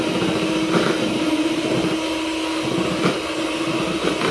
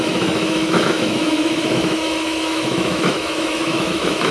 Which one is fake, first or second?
second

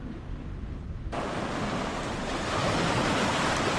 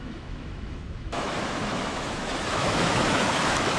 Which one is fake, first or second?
second